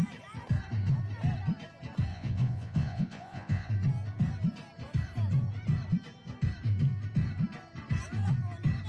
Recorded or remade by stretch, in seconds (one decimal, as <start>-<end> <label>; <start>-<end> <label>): 0.0-2.1 recorded; 2.1-3.7 remade; 3.7-8.9 recorded